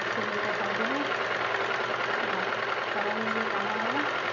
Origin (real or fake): real